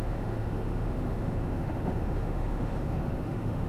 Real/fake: fake